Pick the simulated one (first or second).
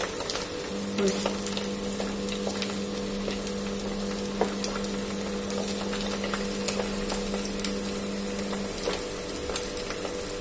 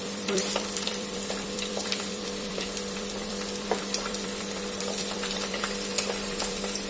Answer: second